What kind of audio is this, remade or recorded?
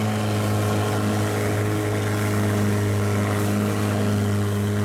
recorded